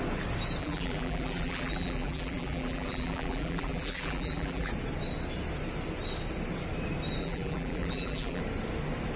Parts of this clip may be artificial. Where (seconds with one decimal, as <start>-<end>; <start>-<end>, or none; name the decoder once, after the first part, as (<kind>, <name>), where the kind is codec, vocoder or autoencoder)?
0.6-4.7 (vocoder, BigVGAN v2); 7.2-8.4